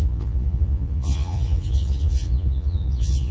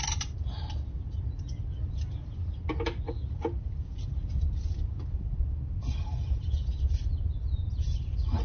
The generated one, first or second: first